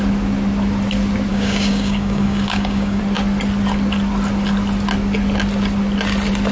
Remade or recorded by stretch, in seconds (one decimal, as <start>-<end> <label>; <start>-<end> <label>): 0.0-1.3 recorded; 1.3-3.0 remade; 3.0-6.5 recorded